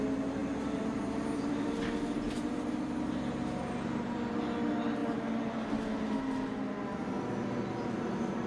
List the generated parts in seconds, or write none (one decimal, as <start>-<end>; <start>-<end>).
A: none